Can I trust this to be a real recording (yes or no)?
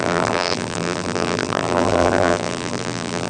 no